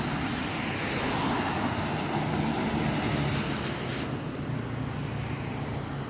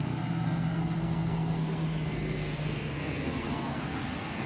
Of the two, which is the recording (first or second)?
first